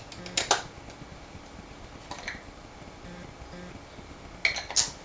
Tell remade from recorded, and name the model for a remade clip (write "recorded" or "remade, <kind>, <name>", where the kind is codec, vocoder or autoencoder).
recorded